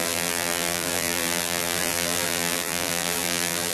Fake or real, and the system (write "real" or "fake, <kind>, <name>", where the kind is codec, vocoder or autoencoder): fake, vocoder, BigVGAN v2